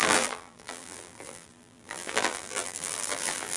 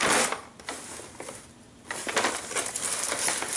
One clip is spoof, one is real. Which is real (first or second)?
second